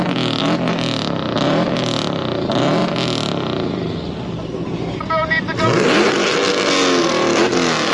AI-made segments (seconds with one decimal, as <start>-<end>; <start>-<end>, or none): none